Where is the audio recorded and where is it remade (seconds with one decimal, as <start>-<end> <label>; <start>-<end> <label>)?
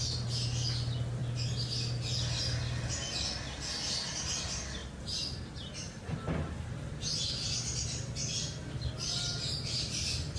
0.0-10.4 recorded